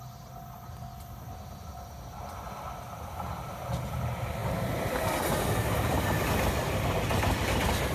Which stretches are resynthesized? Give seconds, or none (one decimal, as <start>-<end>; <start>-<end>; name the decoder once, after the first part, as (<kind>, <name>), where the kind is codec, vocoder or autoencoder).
none